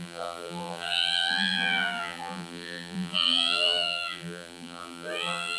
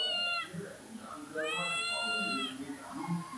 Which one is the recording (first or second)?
second